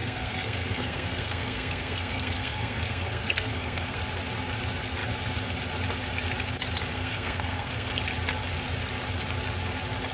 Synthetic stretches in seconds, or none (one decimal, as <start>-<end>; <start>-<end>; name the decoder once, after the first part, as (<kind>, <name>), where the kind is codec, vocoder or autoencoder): 0.0-4.0 (codec, SNAC); 6.9-7.9